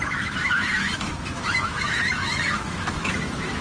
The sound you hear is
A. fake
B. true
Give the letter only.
A